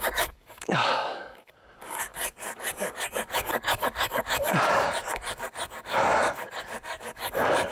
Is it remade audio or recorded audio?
remade